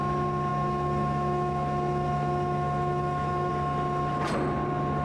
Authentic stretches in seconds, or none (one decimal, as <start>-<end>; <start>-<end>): 0.0-0.5; 3.5-5.0